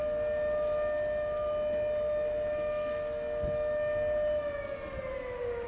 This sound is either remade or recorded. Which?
recorded